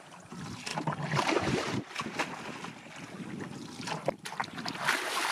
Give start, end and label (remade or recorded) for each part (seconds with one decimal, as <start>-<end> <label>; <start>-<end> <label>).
0.0-0.7 recorded; 0.7-1.8 remade; 1.8-5.3 recorded